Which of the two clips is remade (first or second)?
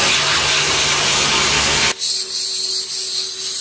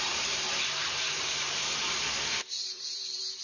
second